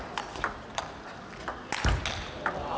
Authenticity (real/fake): real